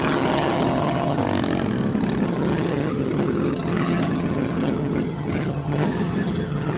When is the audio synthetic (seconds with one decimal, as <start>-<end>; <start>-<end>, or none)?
0.0-1.2; 2.0-6.8

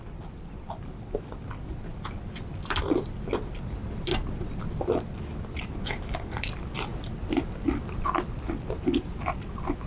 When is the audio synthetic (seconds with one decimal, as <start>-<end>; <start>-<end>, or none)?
none

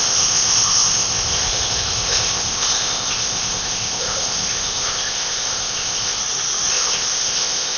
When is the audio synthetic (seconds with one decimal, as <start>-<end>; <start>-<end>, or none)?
0.0-6.2; 6.7-7.8

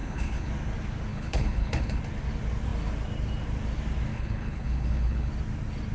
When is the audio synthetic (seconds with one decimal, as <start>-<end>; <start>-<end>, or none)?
0.0-0.5; 1.1-2.0; 4.1-5.3

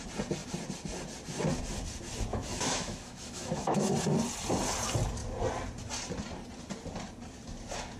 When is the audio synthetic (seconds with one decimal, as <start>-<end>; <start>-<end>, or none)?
2.3-3.9

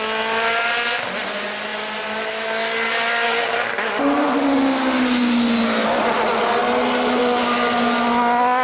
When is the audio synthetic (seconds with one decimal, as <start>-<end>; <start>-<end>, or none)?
none